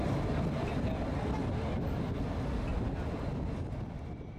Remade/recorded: recorded